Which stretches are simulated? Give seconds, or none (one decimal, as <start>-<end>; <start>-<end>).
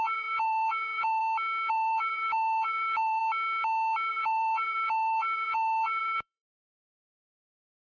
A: 0.0-1.2; 1.7-3.2; 4.1-7.9